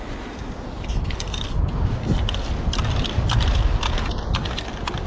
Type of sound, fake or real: real